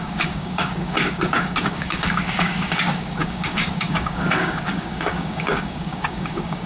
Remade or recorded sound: remade